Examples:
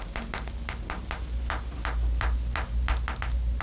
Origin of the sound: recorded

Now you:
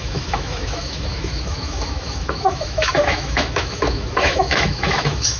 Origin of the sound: remade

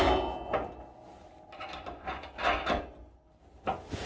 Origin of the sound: recorded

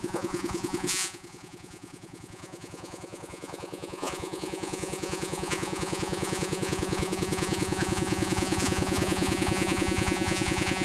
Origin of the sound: remade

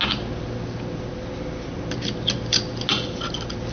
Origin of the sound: recorded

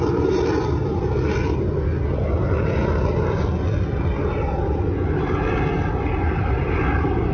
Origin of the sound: recorded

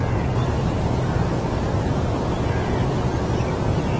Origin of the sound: recorded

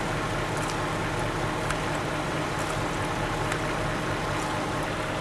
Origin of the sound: recorded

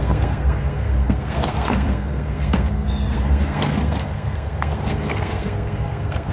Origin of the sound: remade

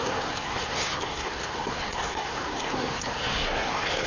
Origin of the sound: remade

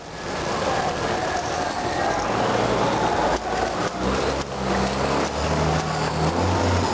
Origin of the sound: recorded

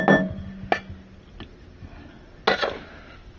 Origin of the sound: recorded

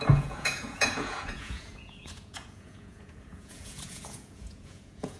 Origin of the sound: remade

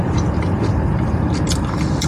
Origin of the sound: recorded